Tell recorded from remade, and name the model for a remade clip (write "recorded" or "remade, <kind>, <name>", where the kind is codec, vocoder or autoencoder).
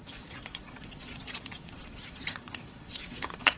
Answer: remade, vocoder, Vocos